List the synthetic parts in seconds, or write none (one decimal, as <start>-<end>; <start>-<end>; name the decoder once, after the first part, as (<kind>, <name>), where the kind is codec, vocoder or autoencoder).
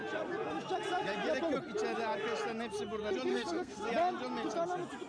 3.3-3.9 (codec, SNAC)